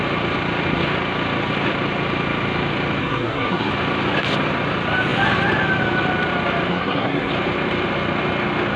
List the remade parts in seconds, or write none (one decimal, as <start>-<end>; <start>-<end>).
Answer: 3.0-3.7; 6.7-7.3

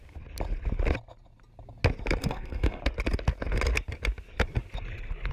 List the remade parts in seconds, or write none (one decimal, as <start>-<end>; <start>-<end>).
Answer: 2.2-2.8

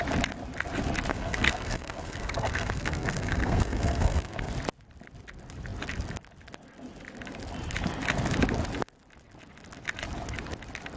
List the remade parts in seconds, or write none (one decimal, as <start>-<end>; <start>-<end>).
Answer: 1.1-4.5

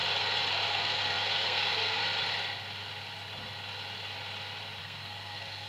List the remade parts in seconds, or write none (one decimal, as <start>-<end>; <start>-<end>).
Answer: 0.7-2.0; 4.8-5.7

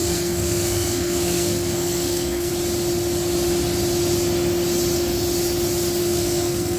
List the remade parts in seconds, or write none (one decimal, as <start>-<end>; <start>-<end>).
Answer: 0.0-2.5; 6.0-6.8